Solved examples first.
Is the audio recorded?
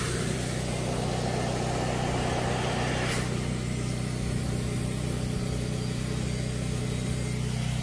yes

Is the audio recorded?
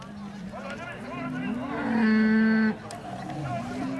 yes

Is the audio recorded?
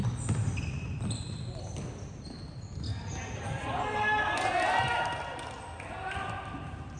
yes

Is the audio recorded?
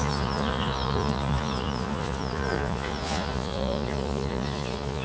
no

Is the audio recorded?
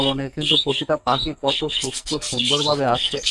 no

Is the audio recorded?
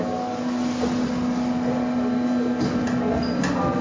yes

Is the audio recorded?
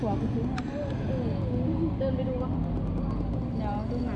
yes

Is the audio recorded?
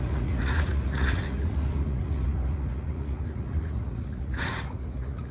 no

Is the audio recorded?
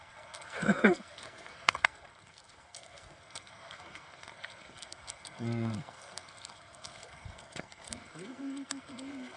no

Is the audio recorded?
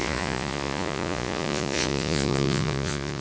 no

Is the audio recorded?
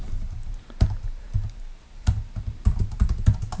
no